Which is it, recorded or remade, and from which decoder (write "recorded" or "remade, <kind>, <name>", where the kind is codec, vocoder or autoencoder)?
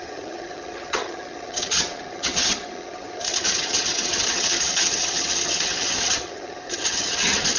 remade, vocoder, HiFi-GAN